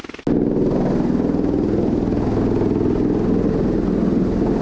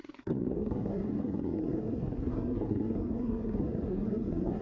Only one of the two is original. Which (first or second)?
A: first